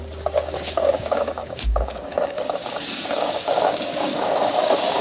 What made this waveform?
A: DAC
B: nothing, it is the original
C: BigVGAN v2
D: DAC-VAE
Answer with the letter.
A